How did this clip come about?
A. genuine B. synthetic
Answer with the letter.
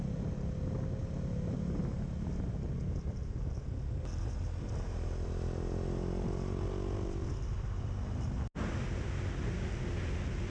A